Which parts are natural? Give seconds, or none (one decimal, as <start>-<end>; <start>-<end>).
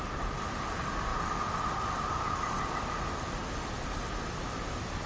0.0-5.1